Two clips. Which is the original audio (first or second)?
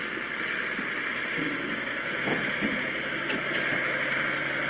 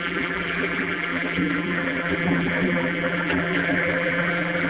first